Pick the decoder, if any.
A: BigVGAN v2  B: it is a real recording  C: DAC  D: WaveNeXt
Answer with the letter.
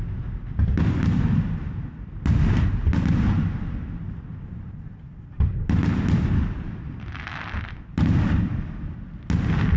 B